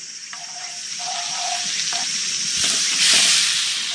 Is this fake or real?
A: real